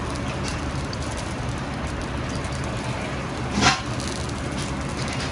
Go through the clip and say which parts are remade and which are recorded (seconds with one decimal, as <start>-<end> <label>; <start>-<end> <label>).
0.0-0.5 recorded; 0.5-2.0 remade; 2.0-5.3 recorded